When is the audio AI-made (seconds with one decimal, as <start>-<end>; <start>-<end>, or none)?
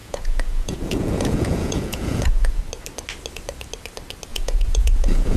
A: 0.0-2.6; 4.3-5.4